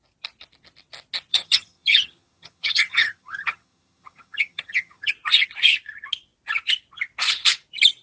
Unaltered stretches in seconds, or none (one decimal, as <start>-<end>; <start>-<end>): 0.0-1.3; 5.1-8.0